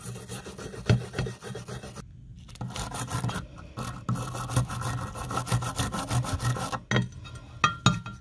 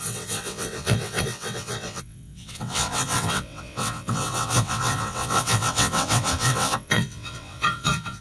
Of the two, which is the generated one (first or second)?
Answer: second